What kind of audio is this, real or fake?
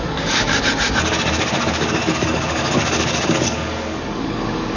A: fake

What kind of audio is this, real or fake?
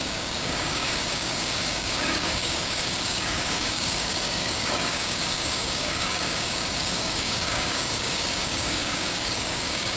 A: fake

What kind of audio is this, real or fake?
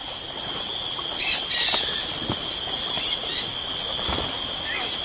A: real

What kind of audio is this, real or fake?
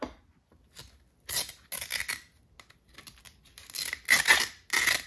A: real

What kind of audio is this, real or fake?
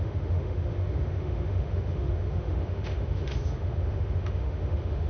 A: fake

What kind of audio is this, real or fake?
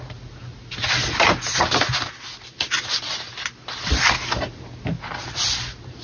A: real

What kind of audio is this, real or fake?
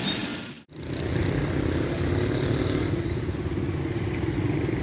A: real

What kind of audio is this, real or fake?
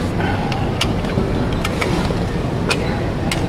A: real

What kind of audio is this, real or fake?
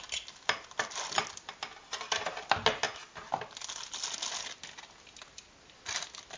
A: real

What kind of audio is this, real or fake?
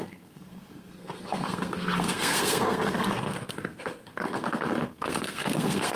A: fake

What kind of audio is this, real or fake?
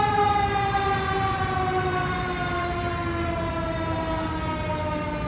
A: real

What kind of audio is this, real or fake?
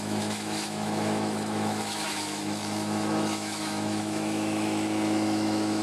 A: fake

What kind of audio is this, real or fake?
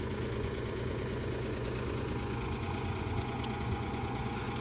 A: fake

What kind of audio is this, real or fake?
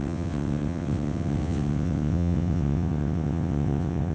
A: fake